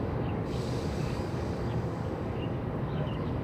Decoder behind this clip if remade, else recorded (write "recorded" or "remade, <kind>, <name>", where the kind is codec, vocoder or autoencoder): remade, codec, DAC